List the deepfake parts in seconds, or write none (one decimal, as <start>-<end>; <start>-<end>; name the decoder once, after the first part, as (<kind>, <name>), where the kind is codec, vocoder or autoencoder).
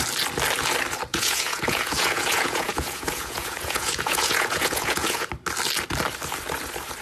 1.1-5.3 (vocoder, Vocos)